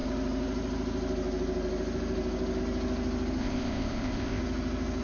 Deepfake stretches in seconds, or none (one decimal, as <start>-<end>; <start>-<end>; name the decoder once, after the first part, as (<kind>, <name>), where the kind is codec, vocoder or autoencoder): 3.4-4.4 (codec, ZipCodec)